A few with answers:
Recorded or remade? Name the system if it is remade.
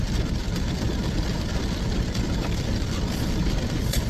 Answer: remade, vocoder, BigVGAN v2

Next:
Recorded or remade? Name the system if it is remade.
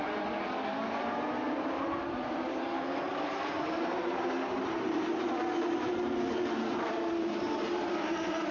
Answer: remade, vocoder, BigVGAN v2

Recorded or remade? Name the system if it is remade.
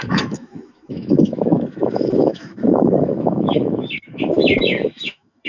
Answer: remade, autoencoder, DAC-VAE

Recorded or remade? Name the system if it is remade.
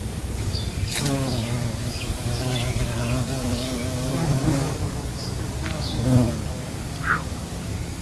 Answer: remade, codec, DAC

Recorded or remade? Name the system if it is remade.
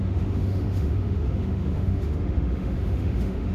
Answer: remade, autoencoder, DAC-VAE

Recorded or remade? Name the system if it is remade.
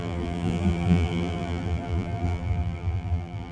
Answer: remade, vocoder, BigVGAN v2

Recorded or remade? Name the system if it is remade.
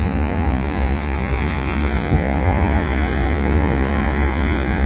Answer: remade, vocoder, Vocos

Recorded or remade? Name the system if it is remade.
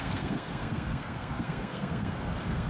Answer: remade, codec, SNAC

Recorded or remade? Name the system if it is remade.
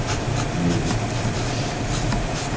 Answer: recorded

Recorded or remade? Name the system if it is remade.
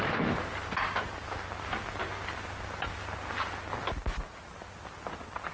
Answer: recorded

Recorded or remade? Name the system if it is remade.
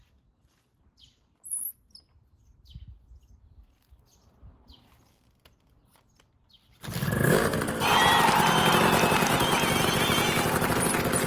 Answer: recorded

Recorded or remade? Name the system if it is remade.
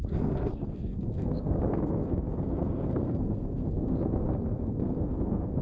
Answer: remade, codec, SNAC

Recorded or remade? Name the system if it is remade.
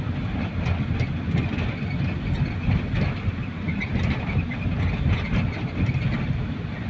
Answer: recorded